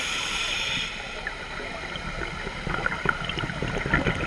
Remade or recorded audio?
recorded